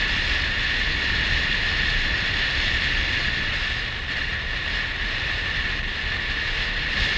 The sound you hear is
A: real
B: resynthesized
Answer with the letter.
A